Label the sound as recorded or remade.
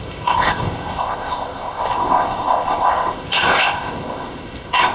remade